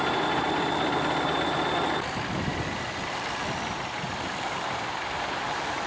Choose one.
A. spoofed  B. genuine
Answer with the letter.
A